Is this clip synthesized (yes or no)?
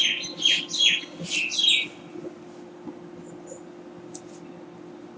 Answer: no